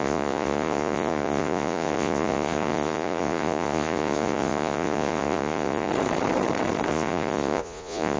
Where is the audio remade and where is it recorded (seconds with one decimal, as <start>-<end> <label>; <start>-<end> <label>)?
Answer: 0.0-5.9 remade; 5.9-6.9 recorded; 6.9-8.2 remade